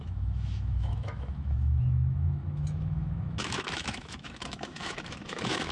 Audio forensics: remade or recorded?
remade